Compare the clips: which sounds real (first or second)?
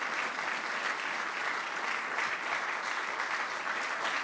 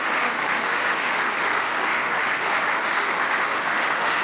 first